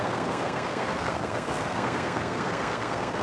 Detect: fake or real fake